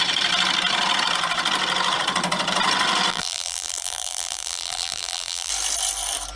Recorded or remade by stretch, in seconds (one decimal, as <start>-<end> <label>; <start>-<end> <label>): 0.0-3.1 recorded; 3.1-5.5 remade; 5.5-6.4 recorded